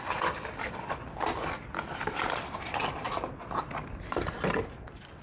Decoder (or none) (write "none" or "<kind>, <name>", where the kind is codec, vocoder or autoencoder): none